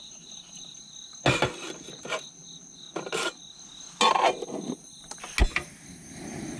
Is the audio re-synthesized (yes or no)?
no